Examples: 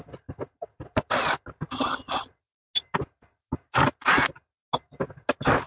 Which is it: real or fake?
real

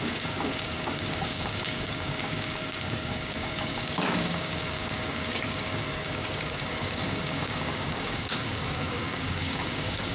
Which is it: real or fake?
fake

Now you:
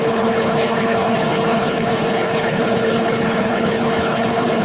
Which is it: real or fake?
fake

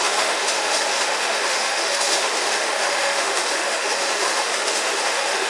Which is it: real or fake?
fake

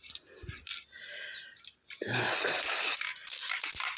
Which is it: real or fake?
real